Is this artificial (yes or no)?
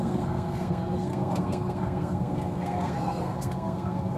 yes